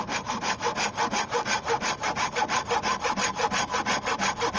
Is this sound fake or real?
real